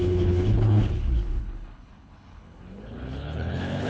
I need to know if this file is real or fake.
fake